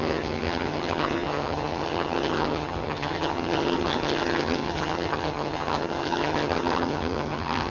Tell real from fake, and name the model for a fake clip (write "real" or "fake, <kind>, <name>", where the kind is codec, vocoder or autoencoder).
fake, vocoder, HiFi-GAN